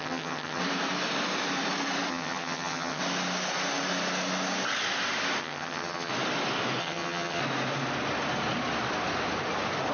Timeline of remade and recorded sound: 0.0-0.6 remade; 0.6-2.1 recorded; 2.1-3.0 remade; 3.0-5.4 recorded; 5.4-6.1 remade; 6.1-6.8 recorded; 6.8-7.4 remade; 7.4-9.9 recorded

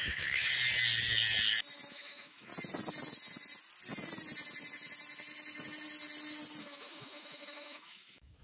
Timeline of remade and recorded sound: 0.0-0.5 remade; 0.5-1.9 recorded; 1.9-2.5 remade; 2.5-6.6 recorded; 6.6-8.4 remade

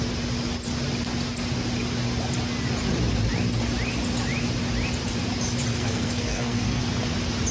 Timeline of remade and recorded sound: 0.0-5.7 recorded; 5.7-6.8 remade; 6.8-7.5 recorded

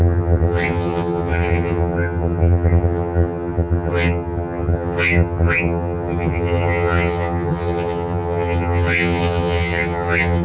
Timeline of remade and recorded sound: 0.0-10.4 remade

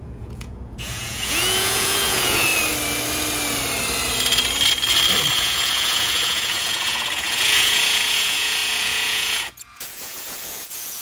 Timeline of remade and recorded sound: 0.0-2.5 remade; 2.5-5.3 recorded; 5.3-11.0 remade

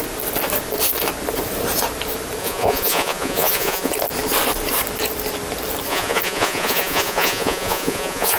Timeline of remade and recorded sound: 0.0-2.4 recorded; 2.4-3.9 remade; 3.9-5.9 recorded; 5.9-8.4 remade

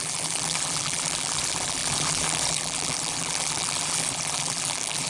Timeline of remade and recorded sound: 0.0-5.1 remade

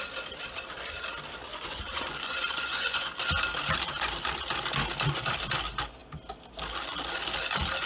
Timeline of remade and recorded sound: 0.0-1.5 recorded; 1.5-3.1 remade; 3.1-7.9 recorded